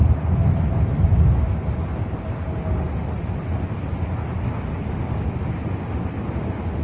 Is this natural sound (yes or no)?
yes